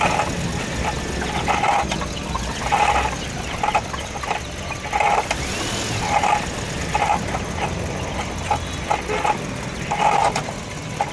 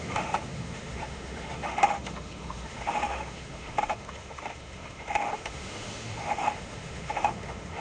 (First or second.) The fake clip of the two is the second